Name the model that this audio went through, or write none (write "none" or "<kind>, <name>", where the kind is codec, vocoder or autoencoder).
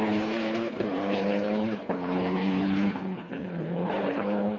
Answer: codec, HILCodec